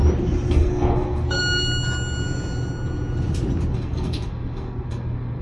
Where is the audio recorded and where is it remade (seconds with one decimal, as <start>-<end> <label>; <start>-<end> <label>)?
0.0-0.5 recorded; 0.5-1.4 remade; 1.4-3.7 recorded; 3.7-5.4 remade